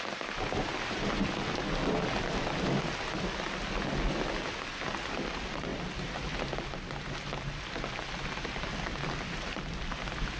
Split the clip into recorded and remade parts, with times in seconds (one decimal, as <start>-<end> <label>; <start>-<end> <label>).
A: 0.0-10.4 recorded